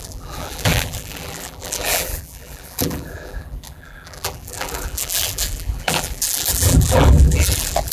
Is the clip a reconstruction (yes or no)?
yes